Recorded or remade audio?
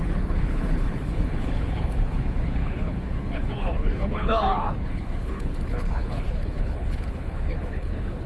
remade